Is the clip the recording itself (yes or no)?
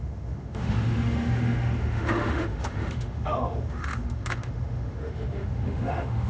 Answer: no